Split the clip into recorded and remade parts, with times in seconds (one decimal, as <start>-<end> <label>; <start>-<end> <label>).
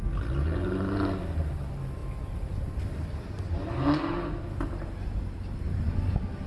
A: 0.0-6.5 recorded